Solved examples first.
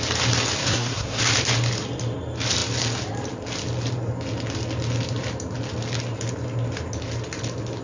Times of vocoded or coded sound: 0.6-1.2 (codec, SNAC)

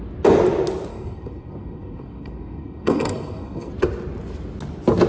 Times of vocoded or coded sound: 0.9-3.7 (codec, SNAC)

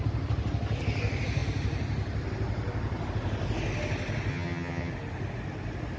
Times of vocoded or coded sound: 4.3-4.9 (vocoder, HiFi-GAN)

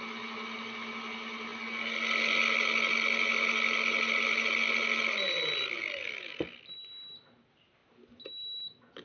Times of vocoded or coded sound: none

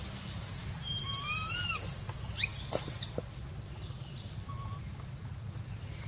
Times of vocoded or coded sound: 0.6-1.6 (vocoder, BigVGAN v2)